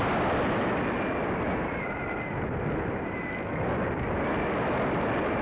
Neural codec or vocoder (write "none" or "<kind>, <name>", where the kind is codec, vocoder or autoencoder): none